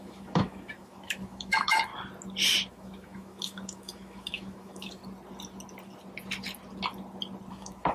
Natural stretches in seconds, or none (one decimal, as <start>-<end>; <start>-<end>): 1.9-2.7; 5.0-7.5